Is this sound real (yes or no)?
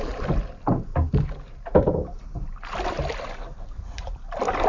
yes